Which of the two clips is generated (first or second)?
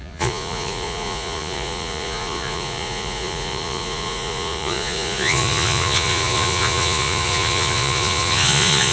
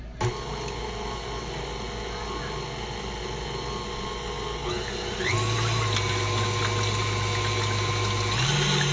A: first